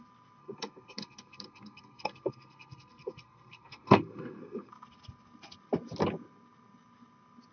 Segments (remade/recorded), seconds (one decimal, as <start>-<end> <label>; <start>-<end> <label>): 0.0-0.4 recorded; 0.4-4.7 remade; 4.7-7.5 recorded